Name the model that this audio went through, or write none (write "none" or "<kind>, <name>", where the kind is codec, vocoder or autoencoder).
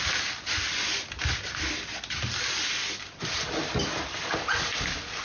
none